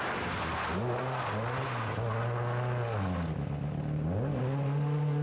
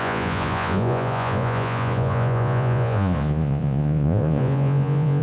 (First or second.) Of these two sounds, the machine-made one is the second